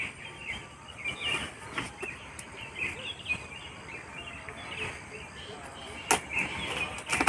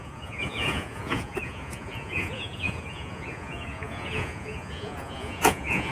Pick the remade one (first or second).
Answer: second